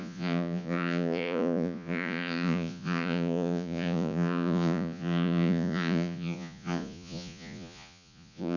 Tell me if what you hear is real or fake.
fake